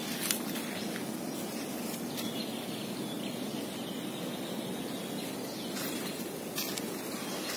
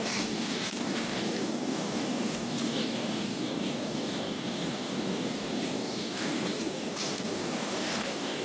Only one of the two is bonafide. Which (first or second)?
first